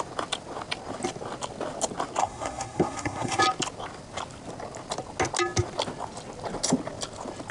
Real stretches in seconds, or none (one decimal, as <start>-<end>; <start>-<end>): 0.0-2.2; 3.4-7.5